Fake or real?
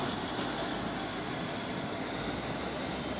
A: real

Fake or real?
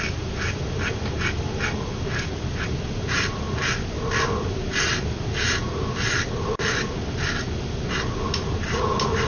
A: real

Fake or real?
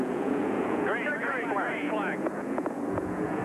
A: fake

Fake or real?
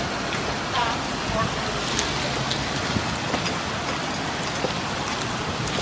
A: real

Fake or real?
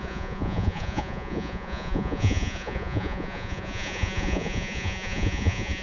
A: fake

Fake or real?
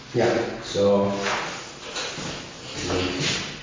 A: real